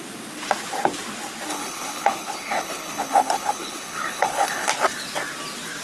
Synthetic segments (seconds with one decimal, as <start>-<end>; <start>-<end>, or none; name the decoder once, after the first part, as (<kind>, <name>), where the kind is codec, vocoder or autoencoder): 1.5-4.7 (codec, HILCodec)